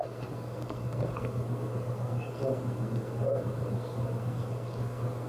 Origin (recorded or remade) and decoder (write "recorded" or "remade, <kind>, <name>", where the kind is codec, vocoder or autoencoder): remade, codec, SNAC